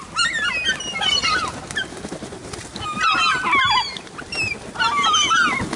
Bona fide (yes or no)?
yes